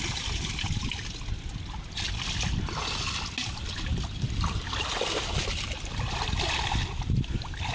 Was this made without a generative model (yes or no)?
yes